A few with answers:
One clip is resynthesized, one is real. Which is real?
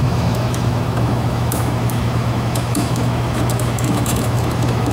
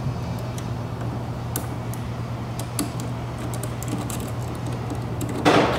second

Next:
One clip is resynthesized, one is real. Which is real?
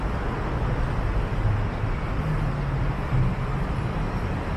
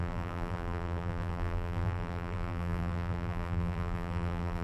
first